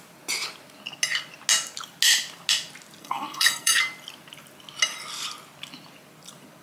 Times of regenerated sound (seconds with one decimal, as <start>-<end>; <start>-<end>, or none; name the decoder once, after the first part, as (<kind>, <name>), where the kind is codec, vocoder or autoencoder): 3.0-3.8 (codec, SNAC)